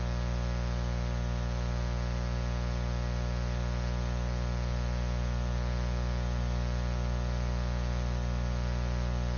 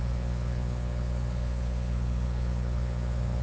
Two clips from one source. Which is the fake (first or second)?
second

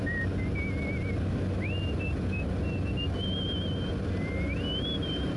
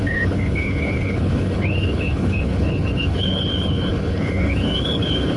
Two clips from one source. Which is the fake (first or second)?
second